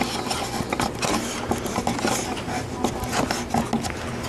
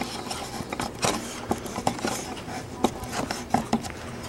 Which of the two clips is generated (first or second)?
second